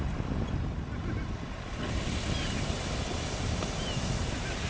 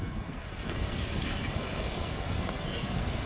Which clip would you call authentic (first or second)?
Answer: first